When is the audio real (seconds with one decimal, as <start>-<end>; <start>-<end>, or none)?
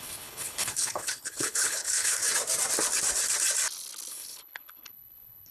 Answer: 2.2-4.1